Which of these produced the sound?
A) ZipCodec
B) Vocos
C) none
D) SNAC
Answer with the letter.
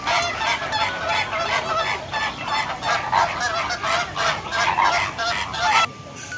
C